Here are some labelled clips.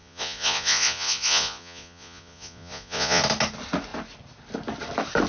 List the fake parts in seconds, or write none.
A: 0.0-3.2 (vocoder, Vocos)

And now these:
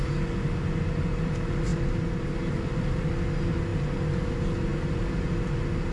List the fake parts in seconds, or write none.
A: none

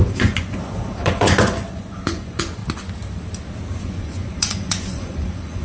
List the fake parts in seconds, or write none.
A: 0.0-2.6 (vocoder, Vocos); 3.8-5.6

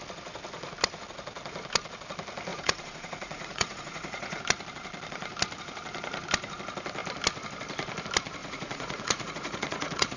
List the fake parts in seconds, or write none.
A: 2.5-4.4 (vocoder, Vocos); 8.4-10.2

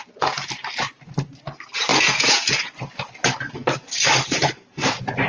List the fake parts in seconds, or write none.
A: 1.9-2.7 (vocoder, Vocos)

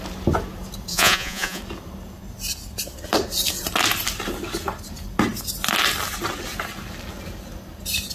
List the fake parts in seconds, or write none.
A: 0.9-1.6 (vocoder, Vocos)

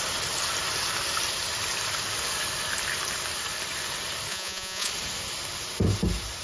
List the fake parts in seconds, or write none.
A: 4.3-4.9 (vocoder, Vocos)